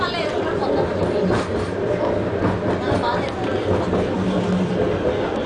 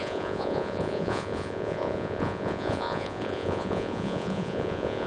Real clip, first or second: first